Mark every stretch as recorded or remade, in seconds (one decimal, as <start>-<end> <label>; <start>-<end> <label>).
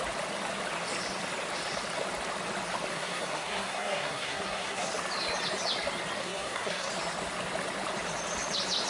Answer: 0.0-2.9 recorded; 2.9-4.9 remade; 4.9-6.2 recorded; 6.2-6.9 remade; 6.9-8.9 recorded